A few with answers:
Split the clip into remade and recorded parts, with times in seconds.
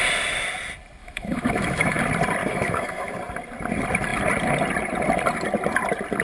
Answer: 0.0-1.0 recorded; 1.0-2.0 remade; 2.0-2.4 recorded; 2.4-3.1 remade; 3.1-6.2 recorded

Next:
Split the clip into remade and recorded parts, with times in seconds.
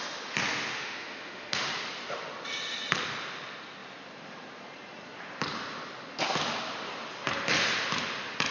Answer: 0.0-0.7 recorded; 0.7-1.7 remade; 1.7-8.5 recorded